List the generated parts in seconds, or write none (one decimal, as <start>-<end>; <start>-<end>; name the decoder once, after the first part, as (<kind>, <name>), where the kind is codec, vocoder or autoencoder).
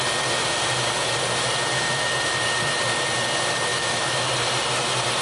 3.7-4.3 (autoencoder, DAC-VAE)